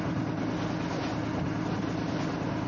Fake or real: real